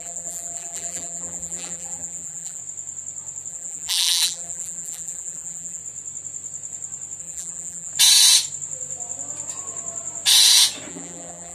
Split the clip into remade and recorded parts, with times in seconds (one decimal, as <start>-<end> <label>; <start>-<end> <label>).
0.0-2.6 remade; 2.6-3.5 recorded; 3.5-5.8 remade; 5.8-7.2 recorded; 7.2-7.9 remade; 7.9-10.9 recorded; 10.9-11.5 remade